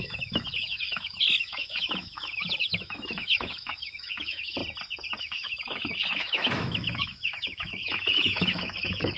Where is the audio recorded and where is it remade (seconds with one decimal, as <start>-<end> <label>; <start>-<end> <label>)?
0.0-4.6 remade; 4.6-5.2 recorded; 5.2-9.2 remade